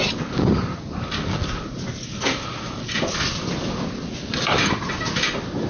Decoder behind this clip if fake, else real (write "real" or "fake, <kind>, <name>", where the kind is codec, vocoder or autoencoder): real